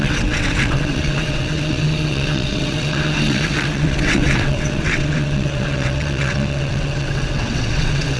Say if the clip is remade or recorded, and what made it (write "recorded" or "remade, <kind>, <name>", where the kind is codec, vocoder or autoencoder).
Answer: remade, vocoder, WaveNeXt